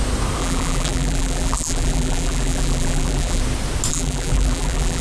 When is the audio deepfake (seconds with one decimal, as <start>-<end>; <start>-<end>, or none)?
0.4-3.4; 3.9-5.0